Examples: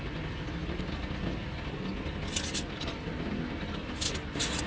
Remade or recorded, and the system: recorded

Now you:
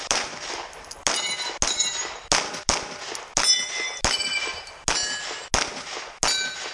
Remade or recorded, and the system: recorded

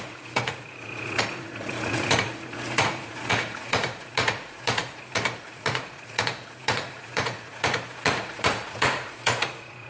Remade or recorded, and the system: remade, vocoder, Vocos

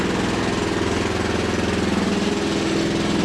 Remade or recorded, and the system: recorded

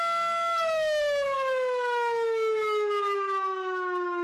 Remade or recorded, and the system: remade, autoencoder, DAC-VAE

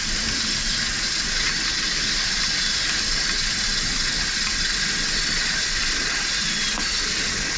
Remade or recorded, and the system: recorded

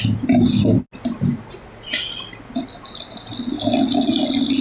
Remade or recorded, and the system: recorded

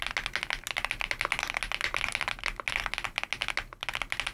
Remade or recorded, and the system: recorded